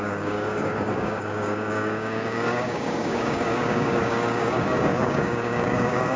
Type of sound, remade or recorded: remade